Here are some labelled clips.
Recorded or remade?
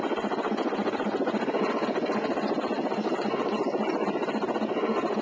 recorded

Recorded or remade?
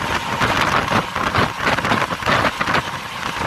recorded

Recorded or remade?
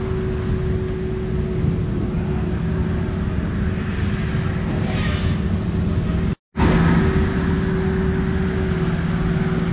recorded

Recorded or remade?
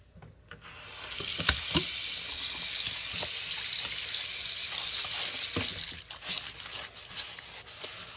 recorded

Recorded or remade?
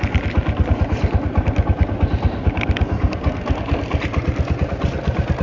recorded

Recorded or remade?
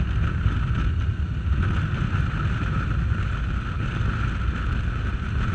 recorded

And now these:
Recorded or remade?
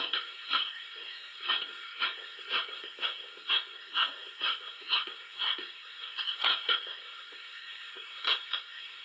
remade